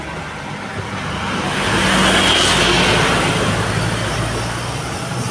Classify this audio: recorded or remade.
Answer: recorded